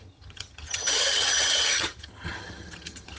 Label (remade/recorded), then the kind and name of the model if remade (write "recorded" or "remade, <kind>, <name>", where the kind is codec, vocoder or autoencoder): remade, vocoder, HiFi-GAN